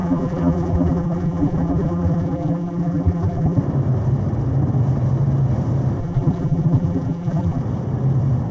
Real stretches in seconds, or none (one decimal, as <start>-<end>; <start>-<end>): 3.6-6.0; 7.6-8.5

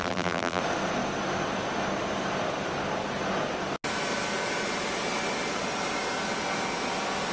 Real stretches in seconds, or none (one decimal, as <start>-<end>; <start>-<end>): 0.6-7.3

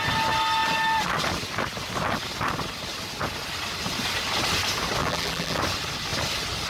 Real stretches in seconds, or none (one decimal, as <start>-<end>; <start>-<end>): 0.0-5.0; 5.6-6.7

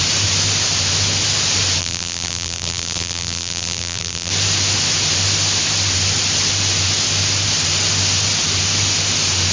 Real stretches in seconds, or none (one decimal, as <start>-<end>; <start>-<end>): 0.0-1.8; 4.3-9.5

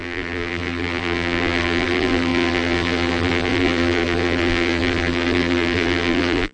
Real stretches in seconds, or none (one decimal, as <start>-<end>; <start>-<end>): none

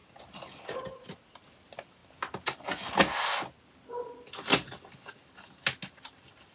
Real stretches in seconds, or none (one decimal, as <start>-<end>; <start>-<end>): 0.0-1.6; 2.0-5.9

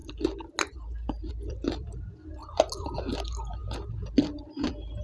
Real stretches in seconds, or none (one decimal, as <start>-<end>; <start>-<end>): 0.0-5.0